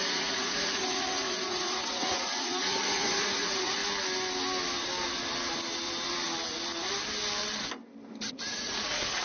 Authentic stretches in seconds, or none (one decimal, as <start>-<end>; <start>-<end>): 3.8-8.3